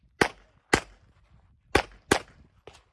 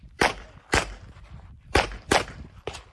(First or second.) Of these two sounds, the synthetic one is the second